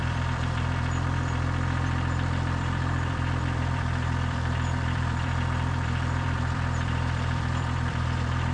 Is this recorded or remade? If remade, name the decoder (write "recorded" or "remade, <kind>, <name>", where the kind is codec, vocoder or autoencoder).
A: remade, vocoder, BigVGAN v2